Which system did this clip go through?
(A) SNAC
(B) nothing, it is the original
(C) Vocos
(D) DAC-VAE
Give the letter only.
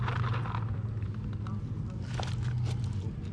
B